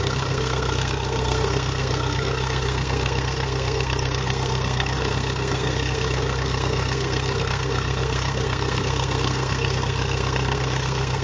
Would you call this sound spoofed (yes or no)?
yes